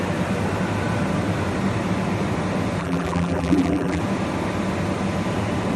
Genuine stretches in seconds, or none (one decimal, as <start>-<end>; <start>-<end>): 0.0-2.8; 4.0-5.8